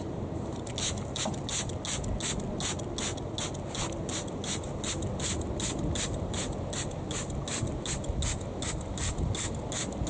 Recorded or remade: recorded